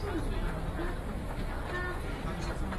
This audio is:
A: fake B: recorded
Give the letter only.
B